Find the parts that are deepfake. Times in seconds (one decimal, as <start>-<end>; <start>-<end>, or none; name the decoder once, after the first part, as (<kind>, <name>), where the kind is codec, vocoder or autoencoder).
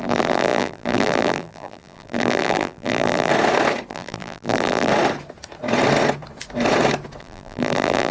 0.0-3.3 (vocoder, BigVGAN v2); 3.9-4.9; 7.2-8.1